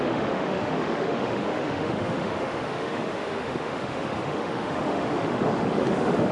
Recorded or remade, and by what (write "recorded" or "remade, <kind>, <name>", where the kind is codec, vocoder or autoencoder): remade, autoencoder, DAC-VAE